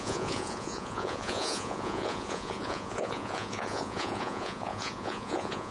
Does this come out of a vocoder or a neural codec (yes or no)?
yes